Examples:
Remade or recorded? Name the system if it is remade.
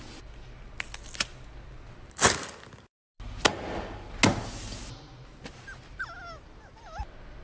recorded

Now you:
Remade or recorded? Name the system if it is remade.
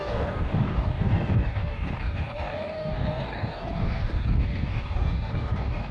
remade, codec, DAC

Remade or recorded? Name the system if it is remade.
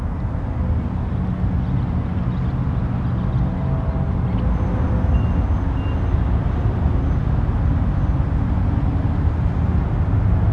recorded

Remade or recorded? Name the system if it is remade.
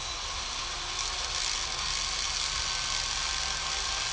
recorded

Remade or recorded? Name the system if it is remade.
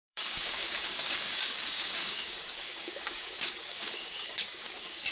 remade, codec, DAC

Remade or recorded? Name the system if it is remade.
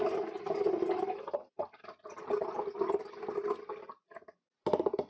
recorded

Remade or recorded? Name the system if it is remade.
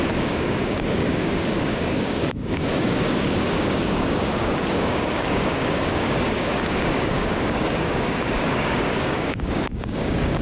remade, codec, DAC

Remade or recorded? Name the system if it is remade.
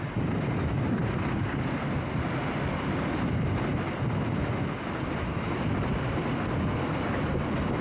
recorded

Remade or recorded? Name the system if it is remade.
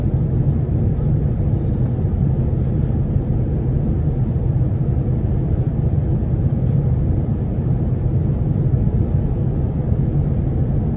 recorded